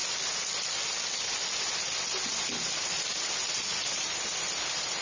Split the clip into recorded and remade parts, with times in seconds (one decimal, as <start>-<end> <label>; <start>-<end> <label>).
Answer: 0.0-5.0 recorded